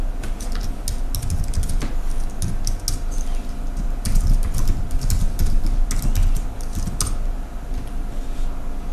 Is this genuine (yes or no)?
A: yes